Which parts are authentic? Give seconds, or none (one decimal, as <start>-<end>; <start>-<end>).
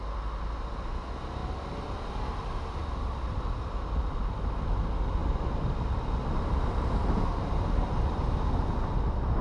0.0-9.4